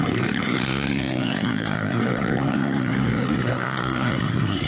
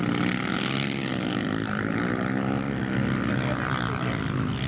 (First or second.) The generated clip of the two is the first